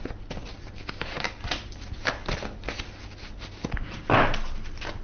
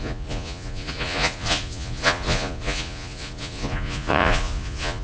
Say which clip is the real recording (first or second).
first